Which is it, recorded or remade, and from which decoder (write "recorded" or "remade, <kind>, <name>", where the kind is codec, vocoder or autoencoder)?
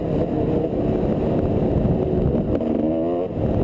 recorded